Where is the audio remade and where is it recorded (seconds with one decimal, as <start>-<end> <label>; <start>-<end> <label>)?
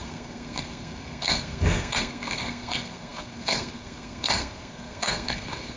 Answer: 0.0-5.8 remade